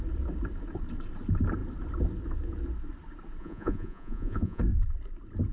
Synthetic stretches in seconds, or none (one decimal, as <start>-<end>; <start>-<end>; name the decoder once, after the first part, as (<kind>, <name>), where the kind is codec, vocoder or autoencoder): 3.4-4.6 (vocoder, Vocos)